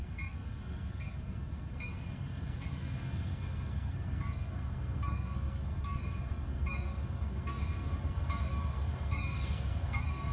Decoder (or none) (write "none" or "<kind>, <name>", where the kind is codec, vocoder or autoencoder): codec, SNAC